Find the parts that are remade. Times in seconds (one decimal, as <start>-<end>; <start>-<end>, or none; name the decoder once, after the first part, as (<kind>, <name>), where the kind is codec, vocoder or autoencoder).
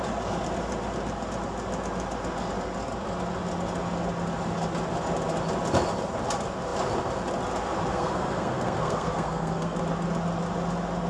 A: 7.9-9.8 (codec, SNAC)